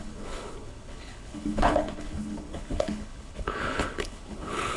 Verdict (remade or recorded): remade